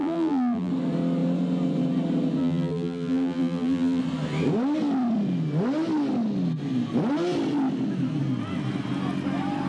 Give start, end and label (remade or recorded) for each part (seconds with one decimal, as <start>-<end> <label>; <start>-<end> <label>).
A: 0.0-0.7 remade; 0.7-2.4 recorded; 2.4-4.0 remade; 4.0-9.7 recorded